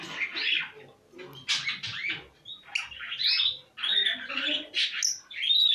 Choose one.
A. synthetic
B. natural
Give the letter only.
B